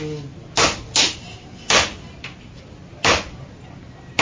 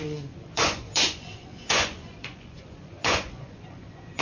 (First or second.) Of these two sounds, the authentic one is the first